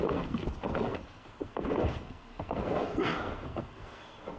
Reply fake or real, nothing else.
fake